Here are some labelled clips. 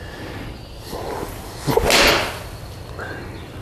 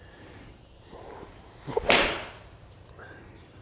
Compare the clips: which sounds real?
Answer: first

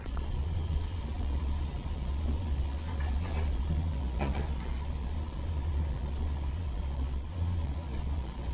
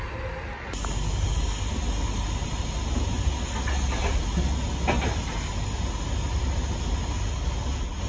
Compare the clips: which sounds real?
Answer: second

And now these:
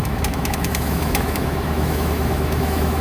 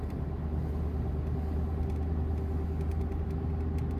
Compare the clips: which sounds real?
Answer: second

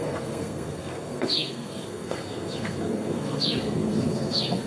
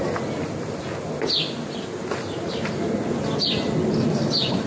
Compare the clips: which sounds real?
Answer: second